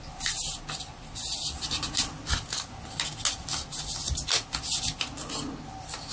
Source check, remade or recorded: recorded